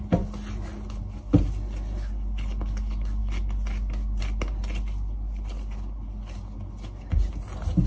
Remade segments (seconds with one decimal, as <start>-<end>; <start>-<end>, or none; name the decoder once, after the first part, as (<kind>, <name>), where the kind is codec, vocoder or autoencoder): none